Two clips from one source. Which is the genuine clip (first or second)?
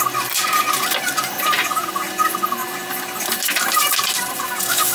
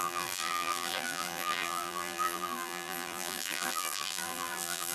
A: first